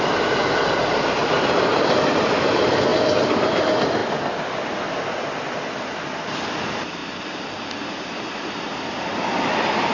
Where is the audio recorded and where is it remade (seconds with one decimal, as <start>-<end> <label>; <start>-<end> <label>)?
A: 0.0-1.2 recorded; 1.2-2.5 remade; 2.5-2.9 recorded; 2.9-3.6 remade; 3.6-7.0 recorded; 7.0-8.8 remade; 8.8-9.9 recorded